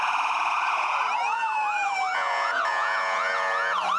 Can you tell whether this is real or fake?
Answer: fake